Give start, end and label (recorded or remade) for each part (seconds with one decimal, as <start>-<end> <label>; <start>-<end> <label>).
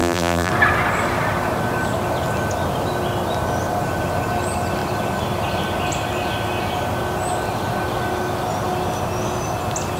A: 0.0-0.5 remade; 0.5-10.0 recorded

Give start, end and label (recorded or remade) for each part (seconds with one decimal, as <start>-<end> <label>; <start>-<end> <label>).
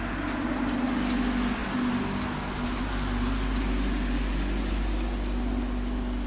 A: 0.0-6.3 recorded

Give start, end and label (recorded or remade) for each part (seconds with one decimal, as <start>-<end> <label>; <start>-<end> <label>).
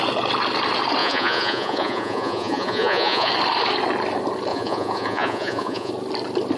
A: 0.0-1.0 recorded; 1.0-3.3 remade; 3.3-4.5 recorded; 4.5-5.9 remade; 5.9-6.6 recorded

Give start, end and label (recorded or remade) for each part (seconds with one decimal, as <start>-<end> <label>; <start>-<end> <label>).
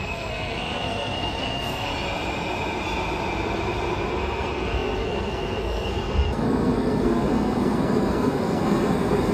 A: 0.0-1.9 remade; 1.9-4.2 recorded; 4.2-9.3 remade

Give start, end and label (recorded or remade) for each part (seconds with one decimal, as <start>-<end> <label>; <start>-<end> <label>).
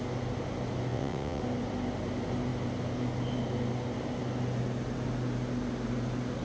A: 0.0-0.9 recorded; 0.9-1.4 remade; 1.4-6.4 recorded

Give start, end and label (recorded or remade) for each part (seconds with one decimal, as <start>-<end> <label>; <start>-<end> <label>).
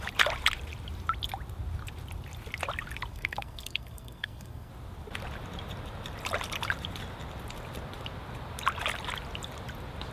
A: 0.0-3.1 recorded; 3.1-4.7 remade; 4.7-10.1 recorded